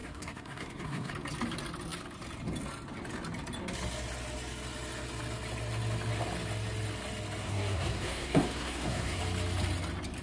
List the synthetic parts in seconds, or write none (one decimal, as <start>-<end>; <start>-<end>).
0.0-1.1; 7.4-9.2